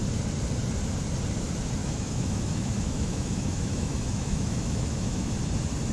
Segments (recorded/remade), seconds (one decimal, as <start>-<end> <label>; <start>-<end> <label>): 0.0-1.8 recorded; 1.8-5.3 remade; 5.3-5.9 recorded